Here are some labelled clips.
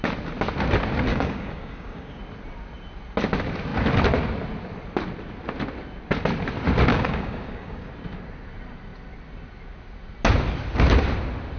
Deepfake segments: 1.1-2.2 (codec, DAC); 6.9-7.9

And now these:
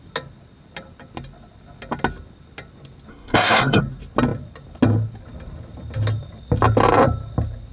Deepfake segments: 3.1-3.8 (codec, SNAC)

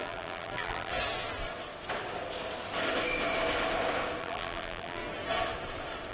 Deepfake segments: 0.0-0.9 (vocoder, BigVGAN v2); 4.2-5.0

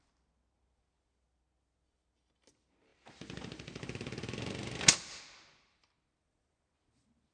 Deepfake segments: none

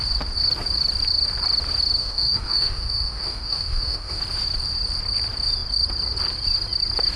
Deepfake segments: 2.0-4.2 (autoencoder, DAC-VAE)

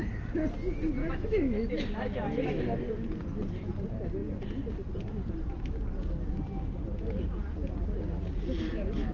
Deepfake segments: 1.0-2.6 (autoencoder, DAC-VAE)